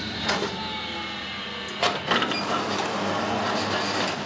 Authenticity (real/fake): real